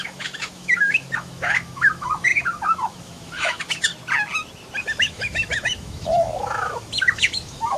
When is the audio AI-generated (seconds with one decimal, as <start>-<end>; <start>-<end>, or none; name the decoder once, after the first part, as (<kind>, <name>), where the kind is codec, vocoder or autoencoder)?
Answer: 0.0-3.9 (autoencoder, DAC-VAE); 4.8-7.8